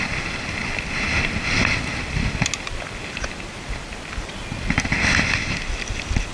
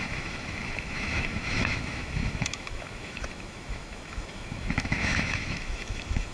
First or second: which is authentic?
first